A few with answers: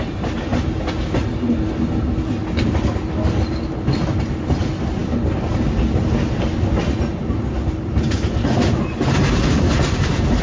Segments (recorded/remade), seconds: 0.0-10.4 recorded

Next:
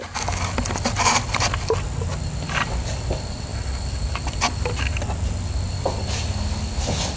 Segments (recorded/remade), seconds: 0.0-3.5 recorded; 3.5-4.8 remade; 4.8-7.2 recorded